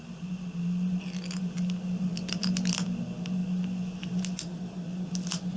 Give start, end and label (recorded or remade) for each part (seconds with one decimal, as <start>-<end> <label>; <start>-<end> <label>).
0.0-5.6 recorded